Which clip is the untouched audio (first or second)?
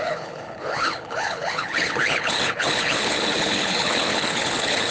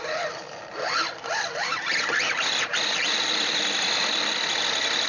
second